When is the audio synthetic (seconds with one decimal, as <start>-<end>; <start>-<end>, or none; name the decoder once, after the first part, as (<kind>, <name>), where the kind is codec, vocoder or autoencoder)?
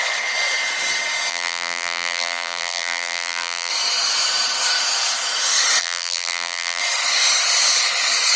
1.3-3.7 (vocoder, BigVGAN v2); 5.8-6.8